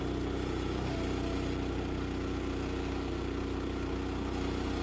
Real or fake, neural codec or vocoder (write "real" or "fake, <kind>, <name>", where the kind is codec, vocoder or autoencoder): real